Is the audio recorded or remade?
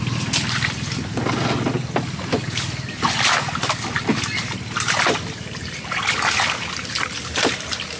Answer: recorded